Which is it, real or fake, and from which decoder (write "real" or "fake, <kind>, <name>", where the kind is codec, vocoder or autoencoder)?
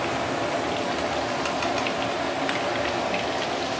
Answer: real